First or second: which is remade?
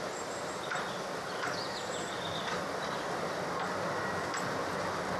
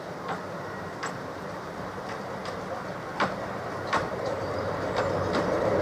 second